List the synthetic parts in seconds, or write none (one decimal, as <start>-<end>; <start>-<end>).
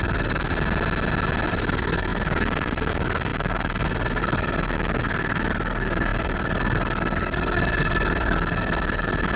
0.0-0.5; 1.5-9.4